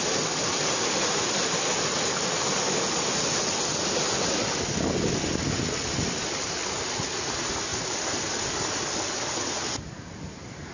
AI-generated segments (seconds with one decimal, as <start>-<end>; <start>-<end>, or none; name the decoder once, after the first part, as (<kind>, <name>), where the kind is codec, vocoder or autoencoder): none